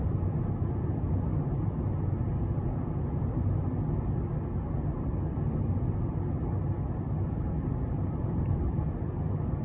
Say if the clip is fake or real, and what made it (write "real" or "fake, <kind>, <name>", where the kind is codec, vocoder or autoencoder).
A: real